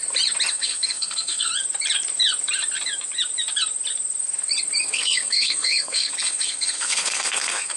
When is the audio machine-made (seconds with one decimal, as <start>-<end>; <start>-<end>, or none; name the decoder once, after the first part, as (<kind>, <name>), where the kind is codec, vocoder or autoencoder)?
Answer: 0.5-1.5 (codec, SNAC); 4.8-7.8